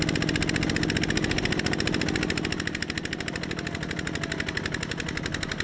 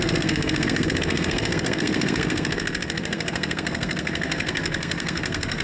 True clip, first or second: first